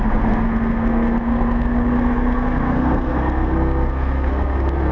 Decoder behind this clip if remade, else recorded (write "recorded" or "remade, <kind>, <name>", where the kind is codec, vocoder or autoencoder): remade, codec, SNAC